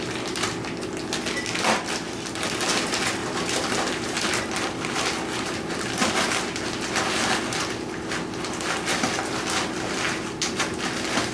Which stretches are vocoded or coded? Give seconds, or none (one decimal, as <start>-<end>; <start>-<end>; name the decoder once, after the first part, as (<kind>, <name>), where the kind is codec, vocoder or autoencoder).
none